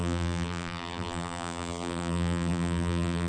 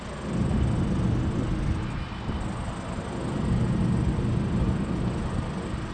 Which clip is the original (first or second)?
second